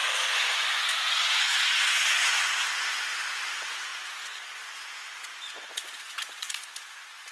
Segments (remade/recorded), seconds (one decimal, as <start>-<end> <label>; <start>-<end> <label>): 0.0-7.3 remade